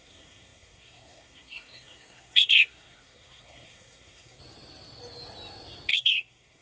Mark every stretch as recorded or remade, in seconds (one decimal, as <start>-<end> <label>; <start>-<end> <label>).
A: 0.0-4.4 remade; 4.4-5.9 recorded; 5.9-6.6 remade